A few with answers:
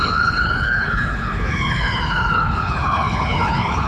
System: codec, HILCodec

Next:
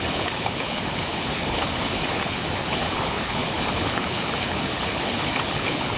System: codec, HILCodec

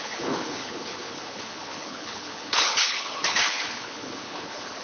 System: codec, HILCodec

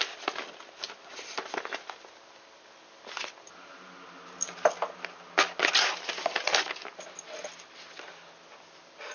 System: none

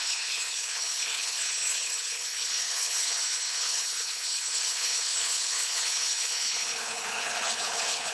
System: codec, HILCodec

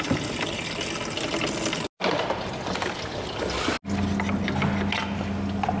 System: none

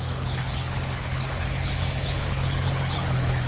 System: codec, HILCodec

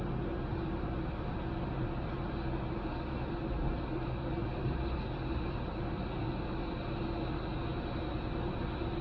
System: none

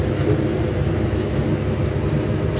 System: none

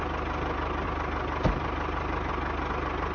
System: none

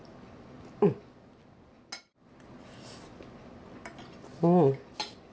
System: none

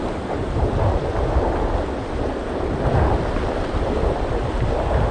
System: none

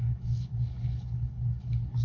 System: codec, HILCodec